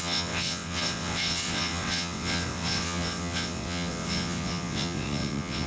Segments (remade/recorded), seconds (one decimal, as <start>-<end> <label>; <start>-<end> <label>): 0.0-5.7 remade